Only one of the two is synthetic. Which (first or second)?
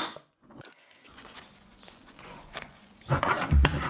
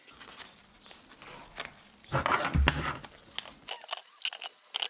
first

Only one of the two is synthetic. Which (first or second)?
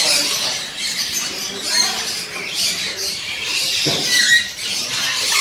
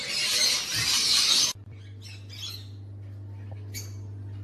first